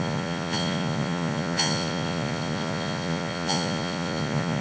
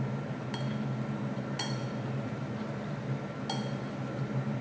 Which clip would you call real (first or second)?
second